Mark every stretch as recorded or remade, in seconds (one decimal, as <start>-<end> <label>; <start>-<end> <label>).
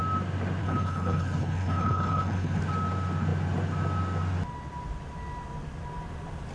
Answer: 0.0-0.6 recorded; 0.6-2.6 remade; 2.6-6.5 recorded